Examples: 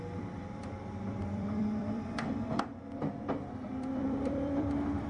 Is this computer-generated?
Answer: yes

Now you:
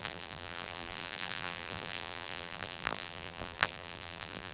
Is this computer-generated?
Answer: yes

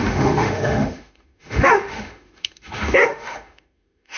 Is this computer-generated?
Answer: yes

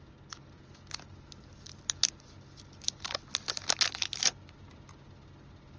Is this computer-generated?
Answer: no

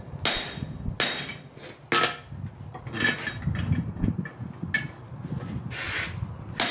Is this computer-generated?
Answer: no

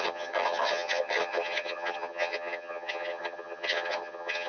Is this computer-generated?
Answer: yes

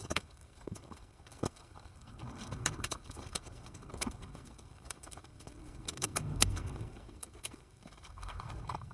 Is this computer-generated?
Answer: yes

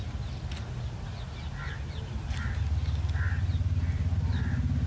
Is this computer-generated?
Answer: no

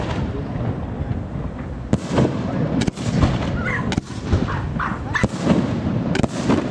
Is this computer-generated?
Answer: no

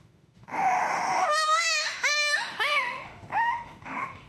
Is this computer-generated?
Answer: yes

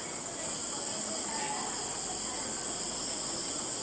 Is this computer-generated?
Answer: no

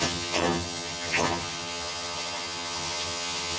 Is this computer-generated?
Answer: yes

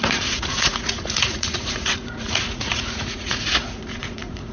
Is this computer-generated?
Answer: yes